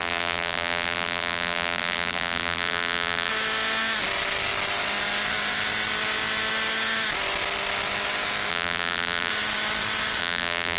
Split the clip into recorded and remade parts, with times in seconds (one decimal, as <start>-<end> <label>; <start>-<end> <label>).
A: 0.0-3.3 remade; 3.3-8.5 recorded; 8.5-9.3 remade; 9.3-10.2 recorded; 10.2-10.8 remade